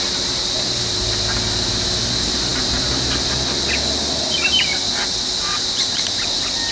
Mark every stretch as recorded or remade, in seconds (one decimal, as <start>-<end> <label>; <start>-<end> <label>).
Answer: 0.0-6.7 recorded